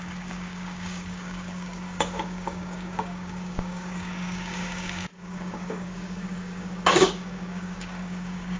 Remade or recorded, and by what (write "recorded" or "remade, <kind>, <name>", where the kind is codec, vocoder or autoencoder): remade, codec, DAC